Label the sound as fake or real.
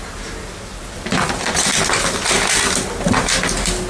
real